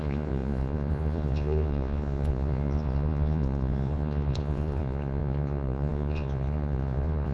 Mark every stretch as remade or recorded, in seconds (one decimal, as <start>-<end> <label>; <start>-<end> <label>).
0.0-7.3 remade